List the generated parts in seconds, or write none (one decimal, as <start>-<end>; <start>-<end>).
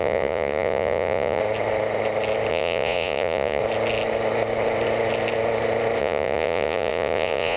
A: 0.0-1.4; 2.5-3.6; 6.0-7.6